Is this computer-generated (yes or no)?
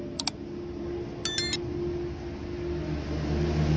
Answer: no